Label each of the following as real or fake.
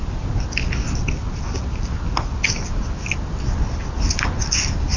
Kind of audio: real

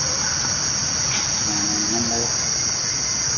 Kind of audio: real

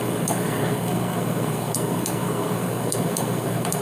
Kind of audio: fake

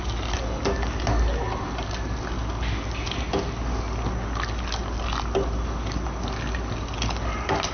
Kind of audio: real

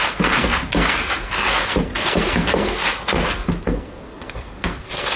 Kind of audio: fake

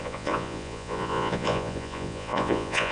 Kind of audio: fake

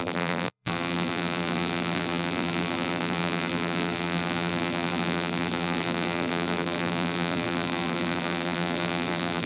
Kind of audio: fake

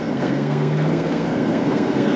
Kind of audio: fake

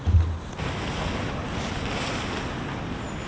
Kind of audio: real